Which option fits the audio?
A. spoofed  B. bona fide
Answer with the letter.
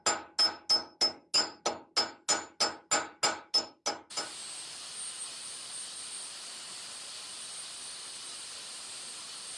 B